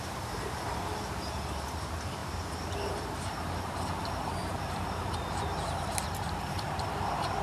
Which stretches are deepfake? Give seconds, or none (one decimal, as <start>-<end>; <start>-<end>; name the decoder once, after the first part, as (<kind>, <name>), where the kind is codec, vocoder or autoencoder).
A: 0.0-7.4 (vocoder, BigVGAN v2)